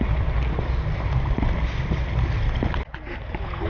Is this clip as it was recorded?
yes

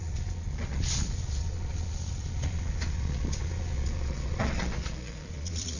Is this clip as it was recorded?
no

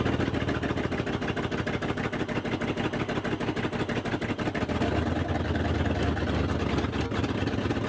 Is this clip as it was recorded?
yes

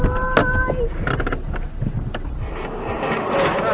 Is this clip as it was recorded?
yes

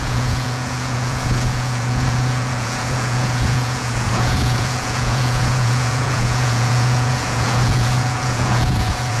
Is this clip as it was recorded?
no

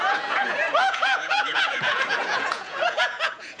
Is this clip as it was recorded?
no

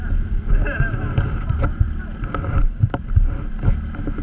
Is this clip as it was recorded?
yes